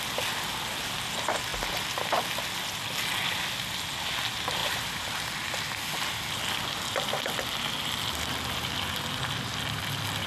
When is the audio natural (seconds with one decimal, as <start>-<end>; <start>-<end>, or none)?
0.0-10.3